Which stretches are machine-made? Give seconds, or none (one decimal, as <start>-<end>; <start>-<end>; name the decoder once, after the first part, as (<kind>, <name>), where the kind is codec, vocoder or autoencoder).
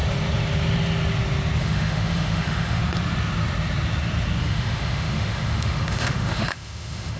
1.6-2.8 (autoencoder, DAC-VAE); 4.4-7.2